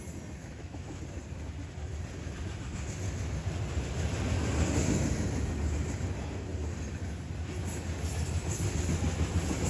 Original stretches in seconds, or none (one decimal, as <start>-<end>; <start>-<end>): 0.0-0.4; 1.0-9.7